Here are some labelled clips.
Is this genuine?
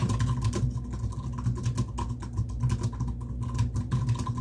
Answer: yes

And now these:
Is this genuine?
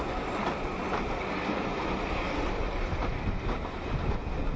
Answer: yes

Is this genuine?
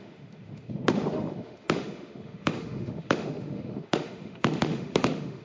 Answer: no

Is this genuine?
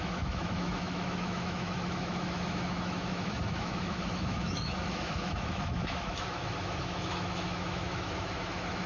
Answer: no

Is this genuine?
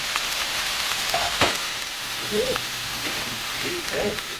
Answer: no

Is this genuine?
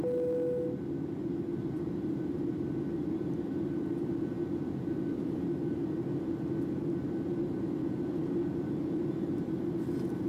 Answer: yes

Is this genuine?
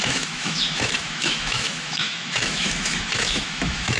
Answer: no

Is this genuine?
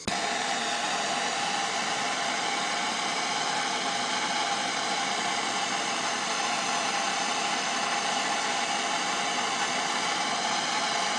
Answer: yes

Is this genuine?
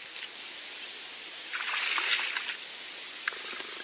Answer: yes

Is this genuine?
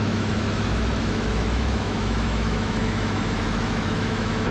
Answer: no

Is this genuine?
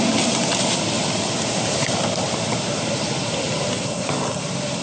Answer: yes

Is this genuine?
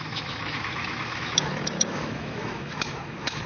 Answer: no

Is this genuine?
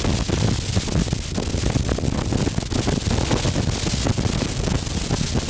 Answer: yes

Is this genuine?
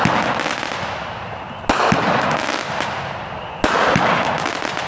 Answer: yes